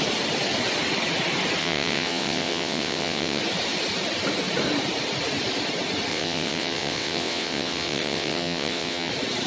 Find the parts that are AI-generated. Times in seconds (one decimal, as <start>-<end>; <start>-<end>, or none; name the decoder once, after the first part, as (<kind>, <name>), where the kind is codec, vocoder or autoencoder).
1.6-3.4 (vocoder, WaveNeXt); 6.1-9.1